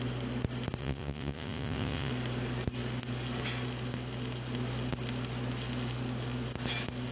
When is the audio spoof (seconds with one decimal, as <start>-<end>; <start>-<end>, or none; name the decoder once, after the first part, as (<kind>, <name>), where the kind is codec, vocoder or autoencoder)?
0.8-2.1 (vocoder, Vocos)